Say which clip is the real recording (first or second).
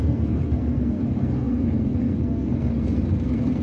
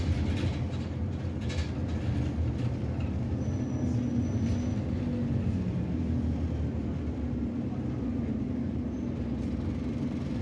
second